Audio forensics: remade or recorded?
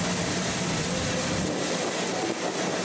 recorded